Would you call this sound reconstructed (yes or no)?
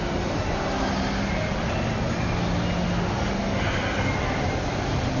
no